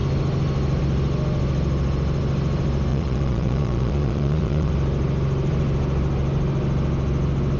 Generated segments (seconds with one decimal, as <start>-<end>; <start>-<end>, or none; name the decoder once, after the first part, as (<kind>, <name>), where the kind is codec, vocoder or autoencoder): 2.9-4.7 (vocoder, Vocos)